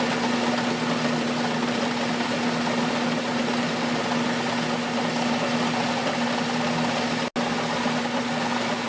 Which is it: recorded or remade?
recorded